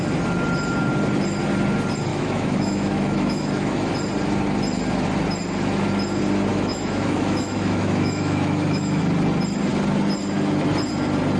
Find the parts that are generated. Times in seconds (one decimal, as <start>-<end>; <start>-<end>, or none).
2.1-3.9; 6.5-9.0